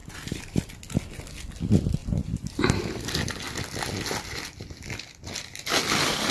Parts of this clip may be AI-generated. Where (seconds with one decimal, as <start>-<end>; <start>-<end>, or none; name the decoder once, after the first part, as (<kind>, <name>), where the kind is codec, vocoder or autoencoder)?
0.0-0.7 (vocoder, BigVGAN v2); 2.0-2.8